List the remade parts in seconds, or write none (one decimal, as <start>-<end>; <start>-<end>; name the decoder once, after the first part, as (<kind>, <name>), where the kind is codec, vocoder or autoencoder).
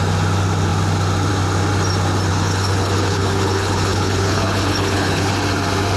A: 2.3-5.3 (codec, HILCodec)